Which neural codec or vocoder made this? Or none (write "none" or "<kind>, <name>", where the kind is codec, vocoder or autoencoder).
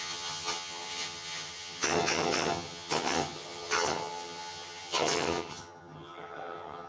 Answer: vocoder, HiFi-GAN